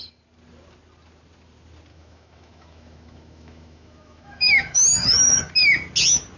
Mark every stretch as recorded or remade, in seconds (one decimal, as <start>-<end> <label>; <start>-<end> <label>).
0.0-1.9 recorded; 1.9-5.5 remade; 5.5-6.4 recorded